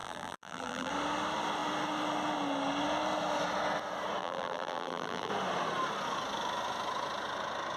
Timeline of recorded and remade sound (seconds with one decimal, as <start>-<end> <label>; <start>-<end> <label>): 0.0-0.9 remade; 0.9-4.2 recorded; 4.2-5.3 remade; 5.3-7.8 recorded